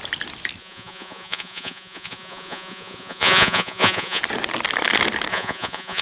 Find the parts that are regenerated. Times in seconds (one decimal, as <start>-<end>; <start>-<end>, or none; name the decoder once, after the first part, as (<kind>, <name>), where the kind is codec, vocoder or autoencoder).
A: 0.6-4.2 (vocoder, Vocos); 5.3-6.0